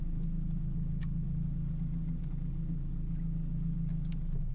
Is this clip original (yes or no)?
yes